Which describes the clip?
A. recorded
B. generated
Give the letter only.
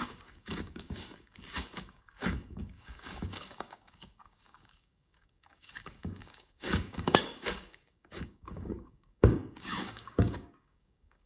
B